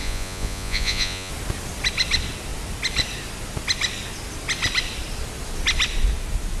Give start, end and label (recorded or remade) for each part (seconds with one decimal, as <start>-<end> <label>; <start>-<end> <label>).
0.0-1.3 remade; 1.3-6.6 recorded